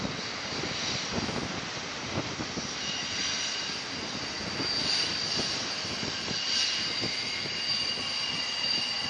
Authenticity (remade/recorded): recorded